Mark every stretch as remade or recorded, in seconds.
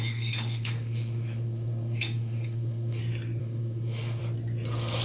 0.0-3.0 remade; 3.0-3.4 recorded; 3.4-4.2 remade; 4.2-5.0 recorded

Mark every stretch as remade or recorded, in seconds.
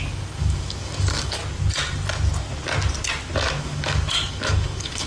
0.0-1.4 remade; 1.4-3.6 recorded; 3.6-5.1 remade